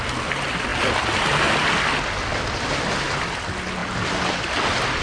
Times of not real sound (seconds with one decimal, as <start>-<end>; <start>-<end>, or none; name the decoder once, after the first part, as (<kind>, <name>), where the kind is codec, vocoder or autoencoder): none

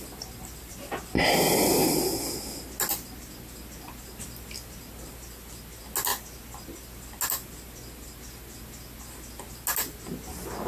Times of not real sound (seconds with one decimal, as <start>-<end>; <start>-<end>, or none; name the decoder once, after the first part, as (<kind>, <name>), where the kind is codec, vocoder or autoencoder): none

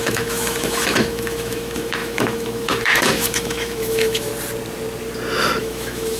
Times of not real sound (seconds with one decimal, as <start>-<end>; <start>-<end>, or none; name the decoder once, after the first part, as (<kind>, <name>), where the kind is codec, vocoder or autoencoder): 0.0-4.3 (autoencoder, DAC-VAE); 5.6-6.2

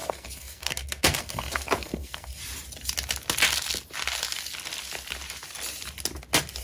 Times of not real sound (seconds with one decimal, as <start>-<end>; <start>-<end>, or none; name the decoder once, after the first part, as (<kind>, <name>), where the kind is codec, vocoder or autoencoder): 0.0-2.4 (codec, SNAC)

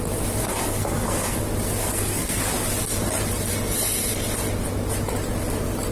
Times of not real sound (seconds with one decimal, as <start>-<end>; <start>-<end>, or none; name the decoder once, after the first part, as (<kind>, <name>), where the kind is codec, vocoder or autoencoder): 0.4-1.4 (codec, SNAC); 1.8-2.4

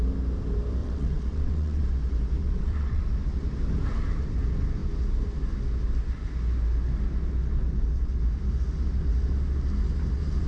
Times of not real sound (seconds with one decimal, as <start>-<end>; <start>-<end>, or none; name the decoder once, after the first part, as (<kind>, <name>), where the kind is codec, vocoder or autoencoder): 0.8-1.8 (vocoder, WaveNeXt); 2.4-3.0

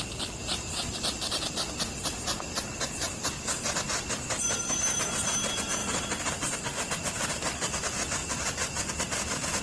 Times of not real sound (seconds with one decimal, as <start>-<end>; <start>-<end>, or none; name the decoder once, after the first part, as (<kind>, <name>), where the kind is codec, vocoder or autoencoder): 0.4-0.9 (vocoder, BigVGAN v2); 5.8-6.9; 8.2-8.9

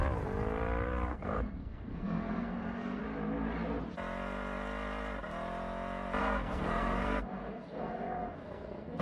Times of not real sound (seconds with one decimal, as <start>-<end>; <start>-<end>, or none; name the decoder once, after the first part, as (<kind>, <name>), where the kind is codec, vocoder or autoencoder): 1.1-3.0 (codec, SNAC); 6.2-9.0